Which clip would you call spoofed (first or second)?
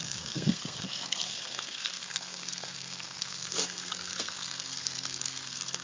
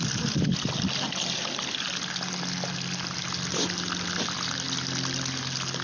first